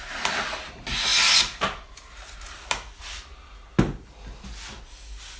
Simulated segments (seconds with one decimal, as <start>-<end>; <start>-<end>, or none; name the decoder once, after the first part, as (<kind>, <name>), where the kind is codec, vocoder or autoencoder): none

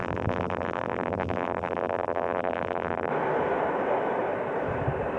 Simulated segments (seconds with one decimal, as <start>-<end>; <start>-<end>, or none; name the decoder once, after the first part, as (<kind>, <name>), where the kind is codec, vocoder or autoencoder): 0.0-3.1 (vocoder, BigVGAN v2)

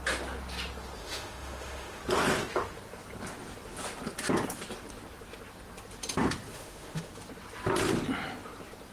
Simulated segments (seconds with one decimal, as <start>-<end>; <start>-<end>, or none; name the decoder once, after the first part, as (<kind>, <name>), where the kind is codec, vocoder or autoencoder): 1.0-2.0 (autoencoder, DAC-VAE); 6.5-7.1

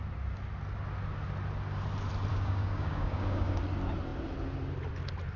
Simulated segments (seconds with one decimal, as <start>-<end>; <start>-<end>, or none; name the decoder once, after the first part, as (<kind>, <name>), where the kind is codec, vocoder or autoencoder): 2.3-3.6 (codec, DAC)

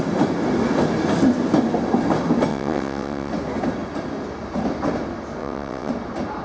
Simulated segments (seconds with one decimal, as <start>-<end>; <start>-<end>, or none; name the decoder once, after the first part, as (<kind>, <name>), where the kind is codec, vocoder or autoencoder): 2.5-3.3 (vocoder, WaveNeXt); 5.4-5.9